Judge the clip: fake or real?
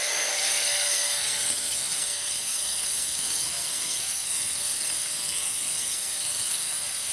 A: fake